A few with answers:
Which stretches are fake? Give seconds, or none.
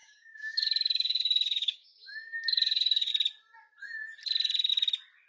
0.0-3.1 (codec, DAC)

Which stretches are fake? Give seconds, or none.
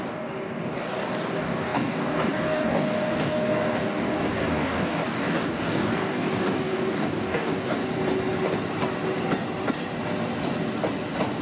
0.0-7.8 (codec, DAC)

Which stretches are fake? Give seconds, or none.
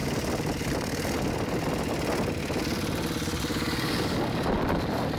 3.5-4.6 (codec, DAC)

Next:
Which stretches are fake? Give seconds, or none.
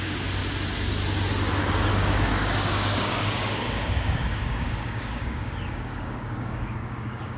0.0-0.4 (codec, DAC); 1.9-7.4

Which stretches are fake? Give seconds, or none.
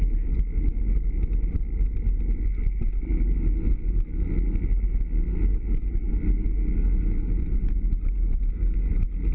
8.3-8.9 (codec, DAC)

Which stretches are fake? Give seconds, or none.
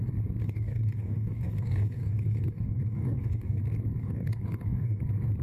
0.4-3.6 (codec, DAC); 4.0-5.0